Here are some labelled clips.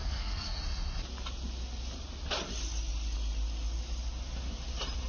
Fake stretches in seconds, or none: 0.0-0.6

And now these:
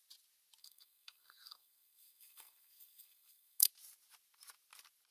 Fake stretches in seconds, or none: 0.6-3.7

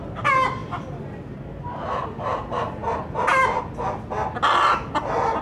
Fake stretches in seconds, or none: none

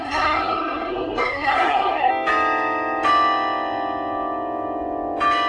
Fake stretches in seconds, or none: 0.0-2.1

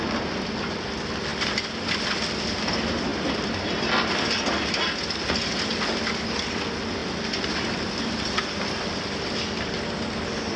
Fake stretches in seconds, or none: none

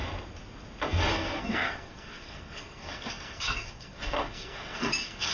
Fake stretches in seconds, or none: 1.1-5.3

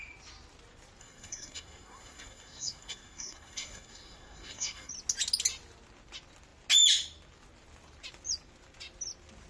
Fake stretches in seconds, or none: 1.0-4.9